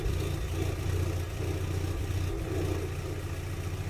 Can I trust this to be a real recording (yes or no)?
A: yes